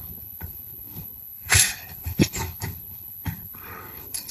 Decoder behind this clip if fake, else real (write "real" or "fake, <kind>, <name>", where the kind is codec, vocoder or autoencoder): fake, codec, HILCodec